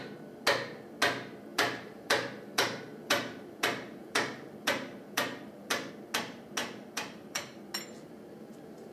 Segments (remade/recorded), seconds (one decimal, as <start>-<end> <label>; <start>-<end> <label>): 0.0-1.5 recorded; 1.5-5.9 remade; 5.9-6.6 recorded; 6.6-7.6 remade; 7.6-8.9 recorded